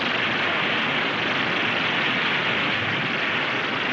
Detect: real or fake real